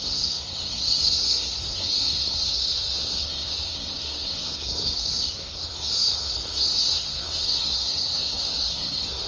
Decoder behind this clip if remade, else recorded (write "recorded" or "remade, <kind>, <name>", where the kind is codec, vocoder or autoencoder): remade, codec, SNAC